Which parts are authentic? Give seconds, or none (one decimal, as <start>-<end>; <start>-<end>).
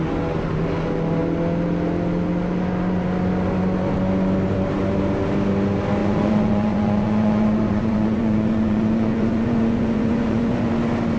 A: 0.0-6.0; 10.7-11.2